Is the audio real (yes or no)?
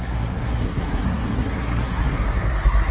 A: no